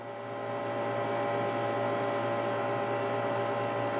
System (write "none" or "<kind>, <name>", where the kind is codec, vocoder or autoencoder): none